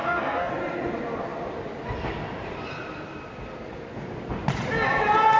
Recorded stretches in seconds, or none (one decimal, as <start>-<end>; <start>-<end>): 0.5-5.4